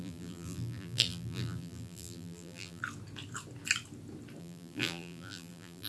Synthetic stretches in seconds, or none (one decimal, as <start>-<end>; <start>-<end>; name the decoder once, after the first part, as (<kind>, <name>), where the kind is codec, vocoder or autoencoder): 0.0-2.8 (vocoder, BigVGAN v2); 4.4-5.9